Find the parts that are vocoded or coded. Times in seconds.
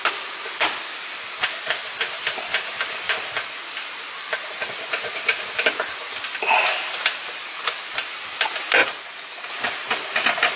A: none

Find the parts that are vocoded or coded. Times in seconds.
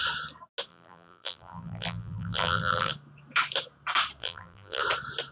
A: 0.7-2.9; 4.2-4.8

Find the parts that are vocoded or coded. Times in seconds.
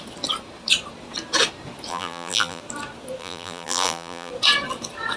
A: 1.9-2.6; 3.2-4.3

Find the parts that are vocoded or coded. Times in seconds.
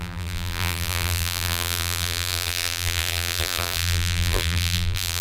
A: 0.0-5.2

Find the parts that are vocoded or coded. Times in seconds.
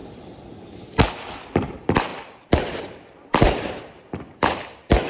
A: 0.0-5.1